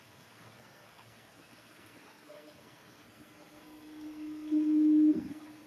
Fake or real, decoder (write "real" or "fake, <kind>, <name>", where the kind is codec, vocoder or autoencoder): fake, codec, SNAC